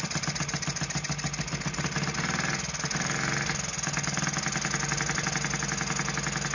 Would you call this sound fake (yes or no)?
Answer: no